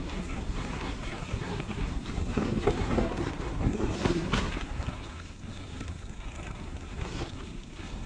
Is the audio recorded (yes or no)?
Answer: no